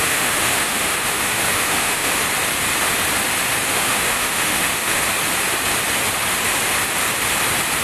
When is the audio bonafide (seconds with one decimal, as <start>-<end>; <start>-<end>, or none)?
2.1-3.7; 5.0-7.8